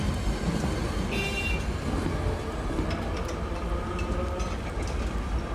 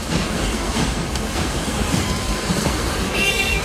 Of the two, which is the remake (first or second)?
second